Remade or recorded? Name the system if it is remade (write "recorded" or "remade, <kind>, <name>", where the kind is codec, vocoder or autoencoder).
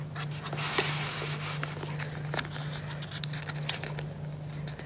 recorded